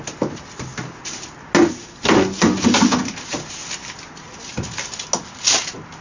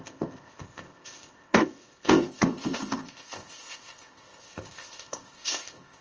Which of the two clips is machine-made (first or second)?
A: second